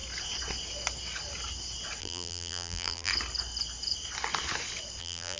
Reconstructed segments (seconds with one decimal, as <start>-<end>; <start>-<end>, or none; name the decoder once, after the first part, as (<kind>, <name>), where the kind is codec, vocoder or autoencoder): 2.0-3.1 (vocoder, BigVGAN v2); 5.0-5.4